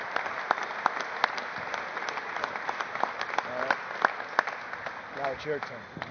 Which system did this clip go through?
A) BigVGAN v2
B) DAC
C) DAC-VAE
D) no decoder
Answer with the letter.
D